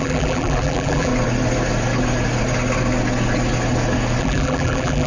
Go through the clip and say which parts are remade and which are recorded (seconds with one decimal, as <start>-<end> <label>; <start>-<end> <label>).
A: 0.0-1.1 remade; 1.1-4.2 recorded; 4.2-5.1 remade

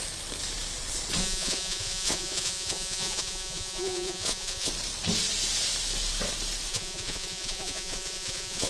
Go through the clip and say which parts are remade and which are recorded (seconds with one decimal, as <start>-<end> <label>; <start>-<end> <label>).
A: 0.0-1.2 recorded; 1.2-4.7 remade; 4.7-6.7 recorded; 6.7-8.7 remade

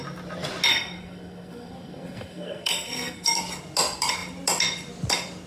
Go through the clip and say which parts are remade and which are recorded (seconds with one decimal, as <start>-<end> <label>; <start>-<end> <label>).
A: 0.0-0.7 recorded; 0.7-3.4 remade; 3.4-5.5 recorded

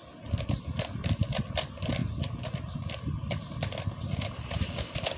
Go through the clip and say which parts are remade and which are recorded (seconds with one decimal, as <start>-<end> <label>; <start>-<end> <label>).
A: 0.0-5.2 recorded

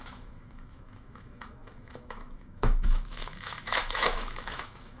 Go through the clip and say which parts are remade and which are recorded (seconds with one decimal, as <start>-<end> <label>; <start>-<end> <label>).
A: 0.0-5.0 remade

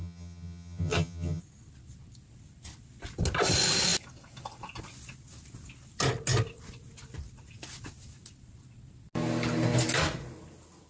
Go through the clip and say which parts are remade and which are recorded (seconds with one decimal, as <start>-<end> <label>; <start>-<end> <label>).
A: 0.0-1.4 remade; 1.4-10.9 recorded

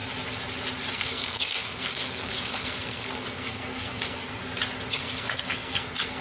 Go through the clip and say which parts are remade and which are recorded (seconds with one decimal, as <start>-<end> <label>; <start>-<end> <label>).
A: 0.0-0.9 recorded; 0.9-4.4 remade; 4.4-4.9 recorded; 4.9-6.2 remade